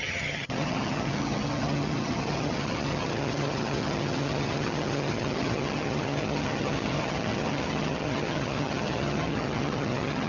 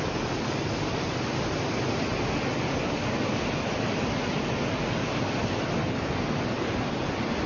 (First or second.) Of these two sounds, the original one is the second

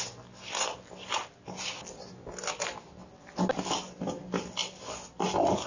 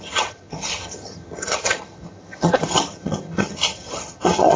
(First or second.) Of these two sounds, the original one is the first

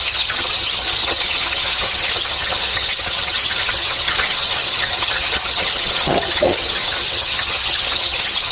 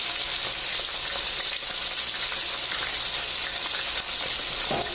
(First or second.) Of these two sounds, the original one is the second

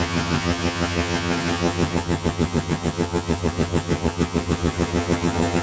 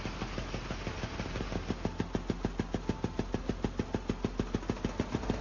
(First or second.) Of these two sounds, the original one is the second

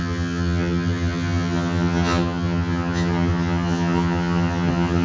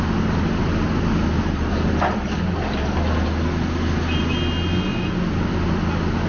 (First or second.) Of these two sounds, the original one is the second